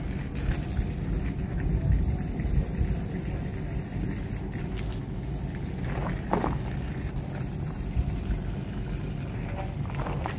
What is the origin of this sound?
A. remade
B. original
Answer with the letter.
B